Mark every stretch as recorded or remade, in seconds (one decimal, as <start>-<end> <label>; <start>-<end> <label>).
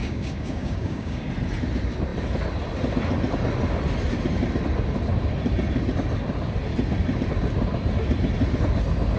0.0-1.3 remade; 1.3-9.2 recorded